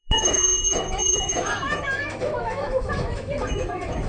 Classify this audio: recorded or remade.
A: remade